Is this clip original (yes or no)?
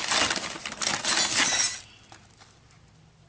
yes